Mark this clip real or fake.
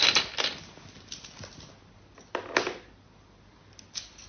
real